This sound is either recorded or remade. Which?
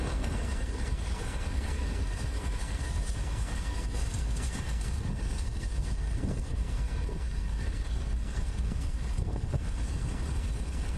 remade